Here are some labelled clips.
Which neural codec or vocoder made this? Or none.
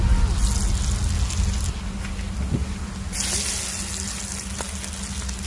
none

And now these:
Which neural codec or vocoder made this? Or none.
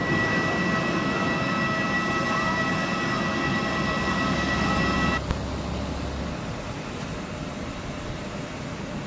none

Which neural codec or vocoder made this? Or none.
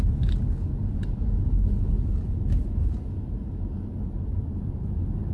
none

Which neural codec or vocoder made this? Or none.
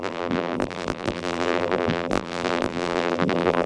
vocoder, BigVGAN v2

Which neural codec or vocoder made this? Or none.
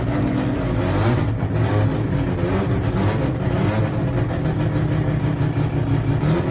none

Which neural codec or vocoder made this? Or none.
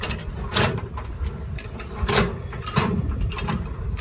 vocoder, BigVGAN v2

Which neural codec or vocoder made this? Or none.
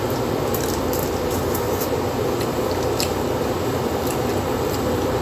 vocoder, BigVGAN v2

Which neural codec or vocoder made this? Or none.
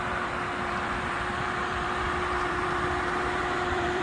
vocoder, BigVGAN v2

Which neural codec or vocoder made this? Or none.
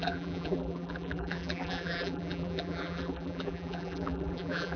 vocoder, BigVGAN v2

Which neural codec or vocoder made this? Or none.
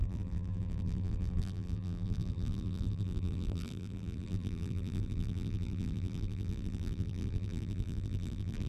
vocoder, BigVGAN v2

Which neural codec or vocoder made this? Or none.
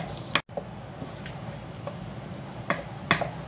none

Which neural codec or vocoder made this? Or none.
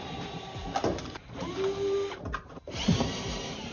vocoder, BigVGAN v2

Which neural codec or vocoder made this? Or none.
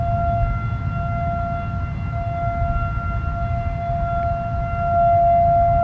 none